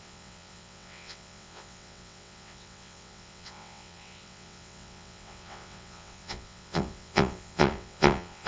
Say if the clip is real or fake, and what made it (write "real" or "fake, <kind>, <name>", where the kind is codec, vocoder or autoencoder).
fake, vocoder, WaveNeXt